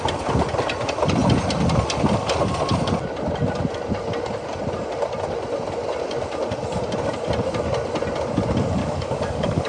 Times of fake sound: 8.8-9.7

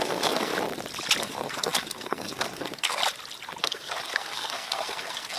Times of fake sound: 0.0-0.5; 1.2-3.0; 3.6-5.4

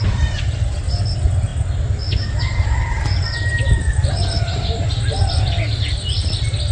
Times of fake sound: none

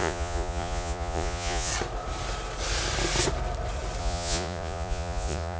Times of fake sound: 0.0-1.7; 4.0-5.6

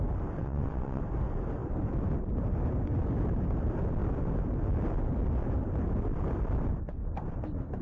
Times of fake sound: 0.4-1.0

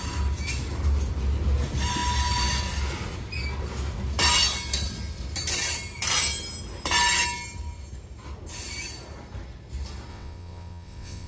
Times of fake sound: 10.1-11.3

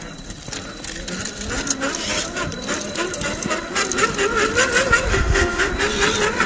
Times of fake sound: 5.1-5.7

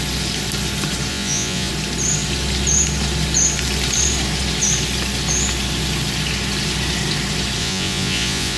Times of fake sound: 1.1-1.7; 7.6-8.6